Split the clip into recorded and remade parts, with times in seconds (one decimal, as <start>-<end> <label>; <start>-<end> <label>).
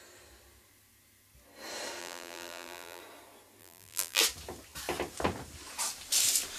0.0-2.0 recorded; 2.0-3.0 remade; 3.0-3.6 recorded; 3.6-4.2 remade; 4.2-6.6 recorded